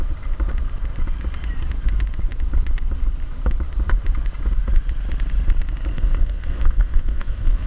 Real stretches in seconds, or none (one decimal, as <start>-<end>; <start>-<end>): 0.0-5.9

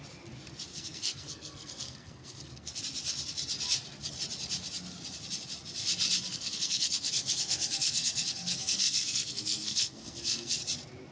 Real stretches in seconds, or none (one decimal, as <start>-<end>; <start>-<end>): 0.0-0.7; 2.8-6.3; 10.6-11.1

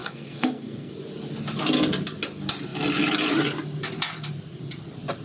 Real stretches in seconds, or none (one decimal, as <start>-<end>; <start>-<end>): 0.9-5.2

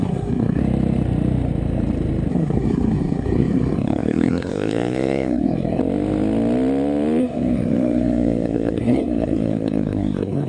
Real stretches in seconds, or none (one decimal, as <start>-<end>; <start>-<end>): 0.6-2.3; 5.8-7.2

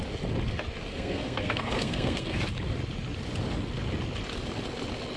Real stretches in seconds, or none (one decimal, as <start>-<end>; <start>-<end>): 0.0-0.9; 2.4-5.2

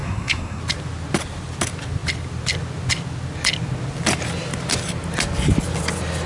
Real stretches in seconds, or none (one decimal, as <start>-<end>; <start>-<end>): 0.6-6.3

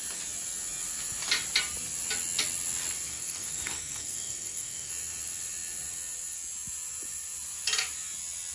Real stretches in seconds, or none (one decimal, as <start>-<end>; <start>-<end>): 0.0-3.1; 4.9-8.5